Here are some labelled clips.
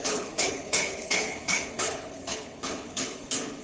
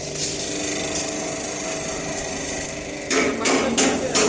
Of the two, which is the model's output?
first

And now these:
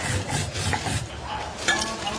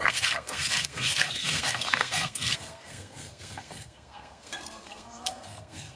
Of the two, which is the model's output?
second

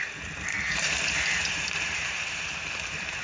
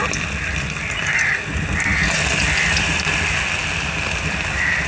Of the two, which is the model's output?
first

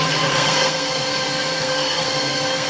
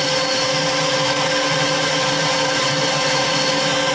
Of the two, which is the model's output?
first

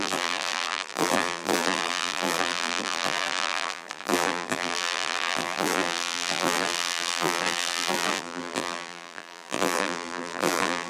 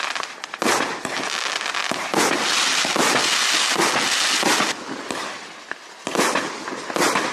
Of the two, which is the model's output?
first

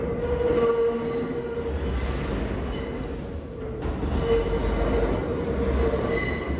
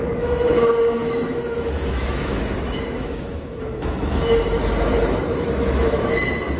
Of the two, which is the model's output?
second